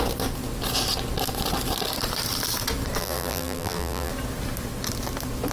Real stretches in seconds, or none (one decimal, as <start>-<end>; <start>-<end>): 0.0-3.0; 4.1-5.5